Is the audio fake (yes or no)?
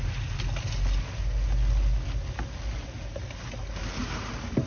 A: no